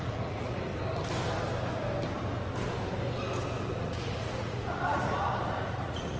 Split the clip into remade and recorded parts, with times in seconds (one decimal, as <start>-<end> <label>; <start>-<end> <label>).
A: 0.0-0.7 remade; 0.7-3.8 recorded; 3.8-6.2 remade